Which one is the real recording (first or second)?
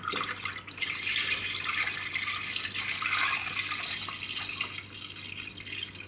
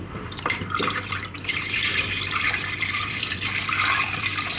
first